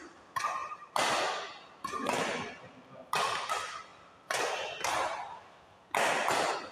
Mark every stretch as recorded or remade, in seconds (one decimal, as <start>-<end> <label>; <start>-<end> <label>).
0.0-0.6 remade; 0.6-2.2 recorded; 2.2-5.8 remade; 5.8-6.3 recorded; 6.3-6.7 remade